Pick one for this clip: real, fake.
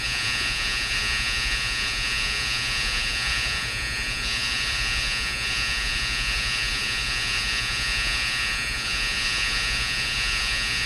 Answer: fake